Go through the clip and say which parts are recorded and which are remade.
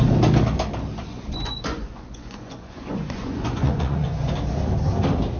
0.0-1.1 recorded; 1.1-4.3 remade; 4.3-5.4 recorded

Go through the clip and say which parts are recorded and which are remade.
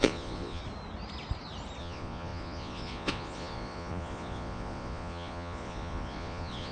0.0-0.6 remade; 0.6-1.8 recorded; 1.8-6.7 remade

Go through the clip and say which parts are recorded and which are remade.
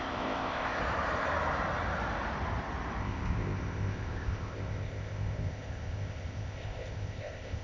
0.0-0.8 remade; 0.8-3.0 recorded; 3.0-7.6 remade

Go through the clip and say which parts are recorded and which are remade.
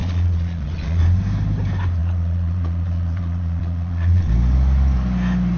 0.0-1.0 remade; 1.0-2.0 recorded; 2.0-4.3 remade; 4.3-5.6 recorded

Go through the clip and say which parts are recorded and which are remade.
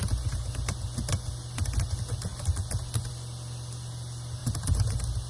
0.0-5.3 recorded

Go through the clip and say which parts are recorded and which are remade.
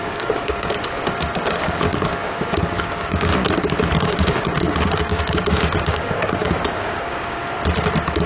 0.0-3.3 remade; 3.3-4.0 recorded; 4.0-7.4 remade; 7.4-8.3 recorded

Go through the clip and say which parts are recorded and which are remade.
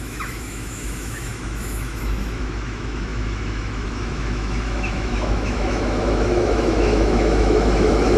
0.0-8.2 remade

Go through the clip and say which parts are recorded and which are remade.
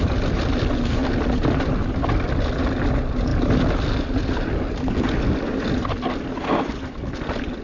0.0-7.6 recorded